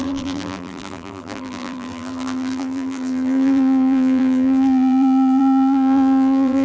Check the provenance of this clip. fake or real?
fake